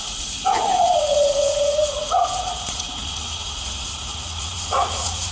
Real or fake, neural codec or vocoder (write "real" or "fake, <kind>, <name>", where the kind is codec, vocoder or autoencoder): fake, vocoder, Vocos